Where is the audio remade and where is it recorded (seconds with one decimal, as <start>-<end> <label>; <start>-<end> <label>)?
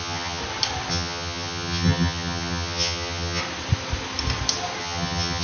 0.0-0.4 remade; 0.4-0.9 recorded; 0.9-3.4 remade; 3.4-4.8 recorded; 4.8-5.4 remade